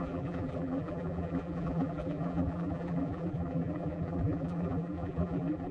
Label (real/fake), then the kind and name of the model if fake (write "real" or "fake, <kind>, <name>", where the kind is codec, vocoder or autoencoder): fake, vocoder, BigVGAN v2